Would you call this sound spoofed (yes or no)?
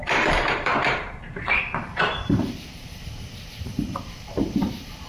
yes